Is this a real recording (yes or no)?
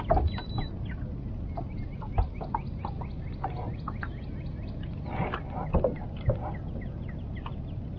yes